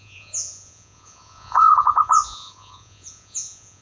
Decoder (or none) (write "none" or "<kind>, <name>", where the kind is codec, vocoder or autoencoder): vocoder, Vocos